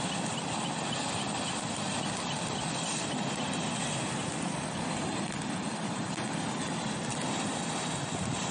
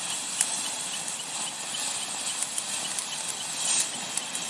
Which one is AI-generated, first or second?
first